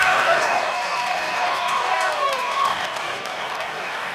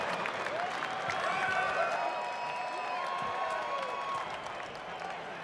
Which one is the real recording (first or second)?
second